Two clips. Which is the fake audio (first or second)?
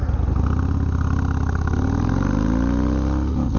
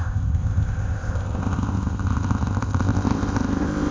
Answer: second